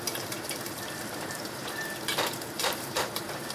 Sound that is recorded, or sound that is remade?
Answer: remade